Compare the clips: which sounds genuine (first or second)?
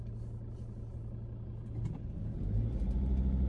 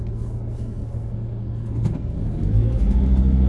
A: first